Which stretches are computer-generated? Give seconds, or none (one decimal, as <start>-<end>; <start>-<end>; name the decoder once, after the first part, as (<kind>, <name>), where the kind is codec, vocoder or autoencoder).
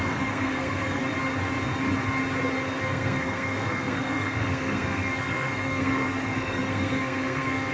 0.0-1.0 (codec, SNAC); 2.8-7.7